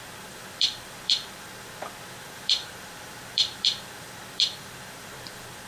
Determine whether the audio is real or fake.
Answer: fake